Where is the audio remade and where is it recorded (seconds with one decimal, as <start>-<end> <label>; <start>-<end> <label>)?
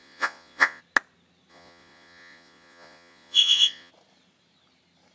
0.0-0.8 remade; 0.8-1.5 recorded; 1.5-3.9 remade; 3.9-5.1 recorded